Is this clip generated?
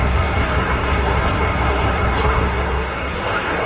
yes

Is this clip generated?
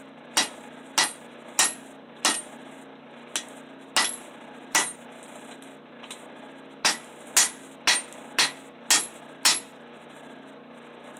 no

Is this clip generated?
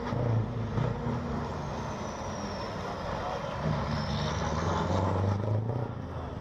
no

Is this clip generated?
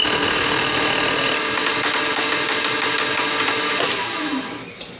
no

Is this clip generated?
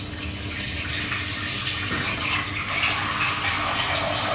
no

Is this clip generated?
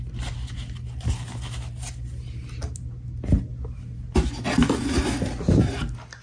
no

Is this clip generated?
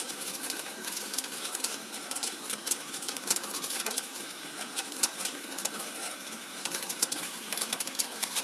yes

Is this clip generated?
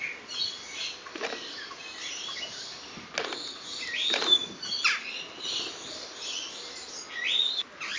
no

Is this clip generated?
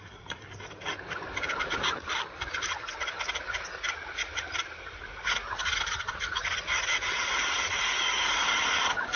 no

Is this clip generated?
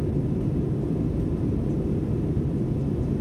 no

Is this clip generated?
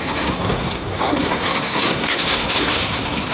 yes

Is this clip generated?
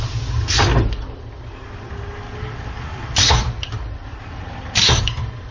no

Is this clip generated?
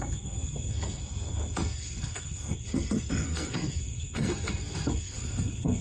yes